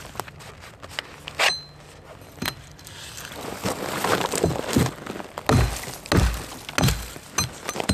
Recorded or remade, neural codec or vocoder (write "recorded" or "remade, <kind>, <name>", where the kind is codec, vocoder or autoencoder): recorded